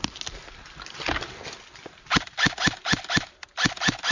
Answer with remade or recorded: recorded